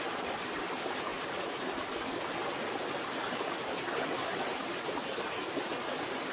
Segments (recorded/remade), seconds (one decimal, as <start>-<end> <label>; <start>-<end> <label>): 0.0-6.3 recorded